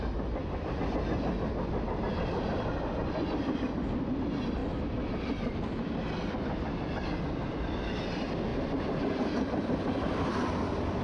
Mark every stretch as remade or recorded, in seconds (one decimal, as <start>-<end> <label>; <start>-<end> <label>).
0.0-11.0 recorded